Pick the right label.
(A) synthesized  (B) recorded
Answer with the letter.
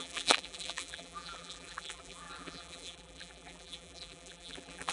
A